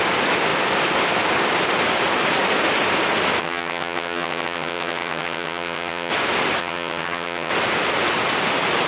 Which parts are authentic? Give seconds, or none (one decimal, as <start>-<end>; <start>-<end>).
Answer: 0.0-3.4; 6.1-6.6; 7.5-8.9